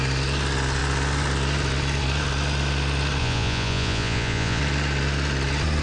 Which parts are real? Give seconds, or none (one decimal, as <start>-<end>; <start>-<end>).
0.0-3.2; 4.6-5.8